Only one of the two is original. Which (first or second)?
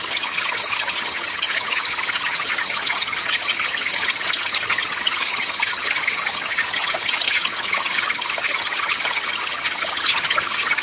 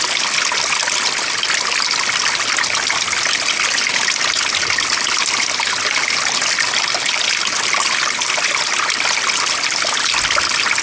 second